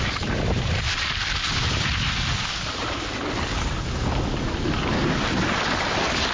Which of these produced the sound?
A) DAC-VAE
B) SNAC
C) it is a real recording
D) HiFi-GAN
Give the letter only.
C